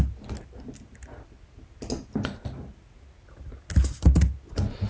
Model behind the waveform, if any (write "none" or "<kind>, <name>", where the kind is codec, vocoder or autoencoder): none